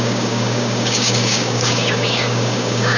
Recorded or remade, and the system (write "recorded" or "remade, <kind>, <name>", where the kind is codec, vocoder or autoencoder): remade, codec, DAC